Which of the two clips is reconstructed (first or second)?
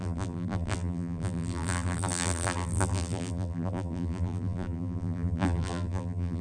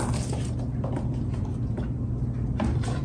first